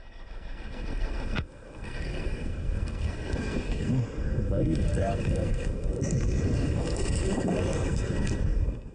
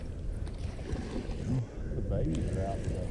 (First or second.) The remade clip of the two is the first